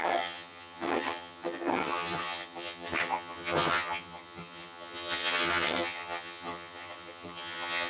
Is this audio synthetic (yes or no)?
yes